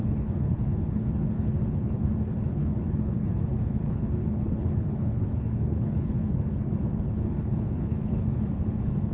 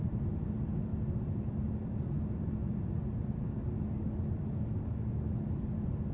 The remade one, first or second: first